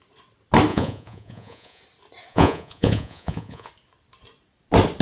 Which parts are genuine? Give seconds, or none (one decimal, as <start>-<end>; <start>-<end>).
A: 0.0-0.7; 1.8-2.3; 3.7-5.0